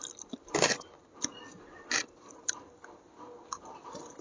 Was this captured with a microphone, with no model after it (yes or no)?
yes